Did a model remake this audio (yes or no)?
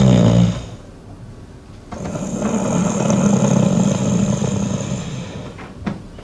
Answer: no